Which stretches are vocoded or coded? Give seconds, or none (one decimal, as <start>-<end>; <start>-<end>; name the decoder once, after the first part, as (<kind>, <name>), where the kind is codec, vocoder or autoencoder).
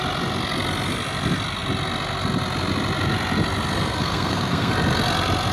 4.0-4.7 (codec, SNAC)